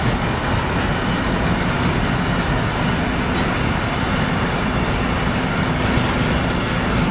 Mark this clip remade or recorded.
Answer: recorded